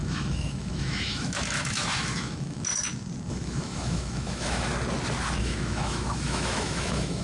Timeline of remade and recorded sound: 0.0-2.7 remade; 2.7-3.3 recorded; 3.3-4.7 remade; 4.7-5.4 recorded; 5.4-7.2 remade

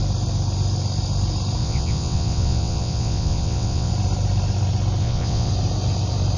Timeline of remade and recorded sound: 0.0-1.6 recorded; 1.6-3.9 remade; 3.9-5.0 recorded; 5.0-5.5 remade; 5.5-6.4 recorded

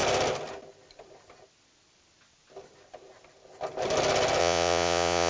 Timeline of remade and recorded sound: 0.0-4.4 recorded; 4.4-5.3 remade

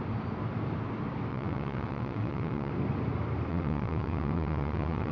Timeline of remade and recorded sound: 0.0-1.3 recorded; 1.3-2.7 remade; 2.7-3.5 recorded; 3.5-5.1 remade